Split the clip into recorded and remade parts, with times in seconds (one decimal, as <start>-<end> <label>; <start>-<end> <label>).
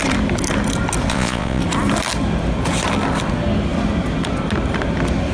0.0-1.1 recorded; 1.1-1.6 remade; 1.6-5.3 recorded